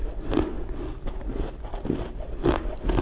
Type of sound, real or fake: real